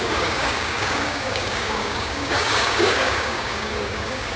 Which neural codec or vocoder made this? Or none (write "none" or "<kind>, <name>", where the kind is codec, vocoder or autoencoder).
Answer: codec, DAC